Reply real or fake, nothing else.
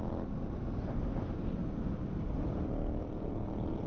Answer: real